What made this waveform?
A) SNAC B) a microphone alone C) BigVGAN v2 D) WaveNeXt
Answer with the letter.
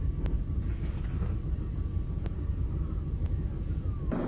B